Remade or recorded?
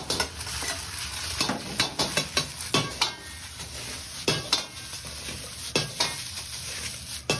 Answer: recorded